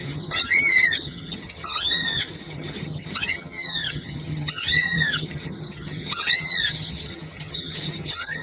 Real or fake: fake